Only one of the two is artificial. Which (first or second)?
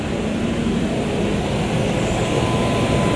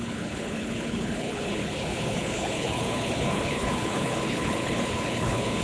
second